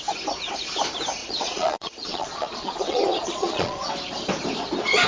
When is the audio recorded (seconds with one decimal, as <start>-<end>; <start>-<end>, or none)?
0.0-1.2; 3.9-5.1